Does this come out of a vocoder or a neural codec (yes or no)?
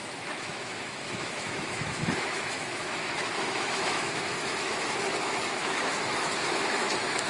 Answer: yes